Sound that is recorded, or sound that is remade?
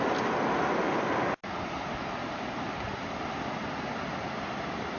recorded